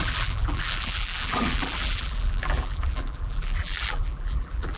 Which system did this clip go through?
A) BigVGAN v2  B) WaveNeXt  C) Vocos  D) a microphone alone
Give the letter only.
A